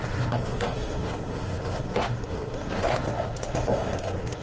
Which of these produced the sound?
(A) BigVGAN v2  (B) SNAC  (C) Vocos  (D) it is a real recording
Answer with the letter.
B